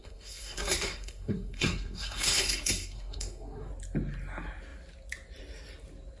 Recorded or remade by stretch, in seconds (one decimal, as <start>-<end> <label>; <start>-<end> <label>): 0.0-3.7 remade; 3.7-6.2 recorded